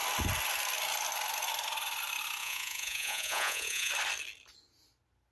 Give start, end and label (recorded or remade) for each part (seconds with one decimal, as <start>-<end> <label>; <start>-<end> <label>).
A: 0.0-2.4 recorded; 2.4-3.9 remade; 3.9-5.3 recorded